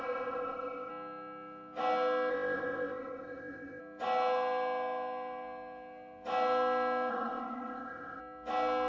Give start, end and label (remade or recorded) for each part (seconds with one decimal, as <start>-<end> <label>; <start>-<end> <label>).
0.0-0.9 remade; 0.9-2.3 recorded; 2.3-3.8 remade; 3.8-7.1 recorded; 7.1-8.2 remade; 8.2-8.9 recorded